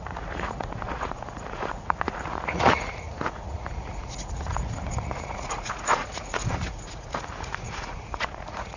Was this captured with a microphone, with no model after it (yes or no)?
no